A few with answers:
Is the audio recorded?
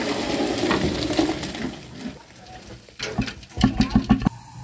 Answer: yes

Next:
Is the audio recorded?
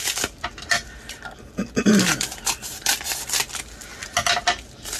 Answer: yes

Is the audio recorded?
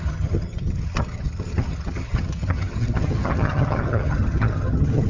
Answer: no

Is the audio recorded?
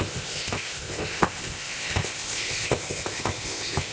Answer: no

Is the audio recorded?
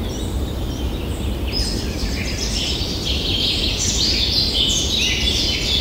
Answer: yes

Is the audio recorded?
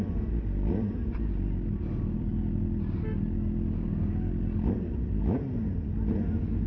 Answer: yes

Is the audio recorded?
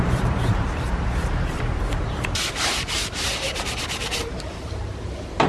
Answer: no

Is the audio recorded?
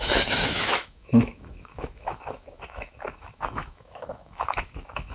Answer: no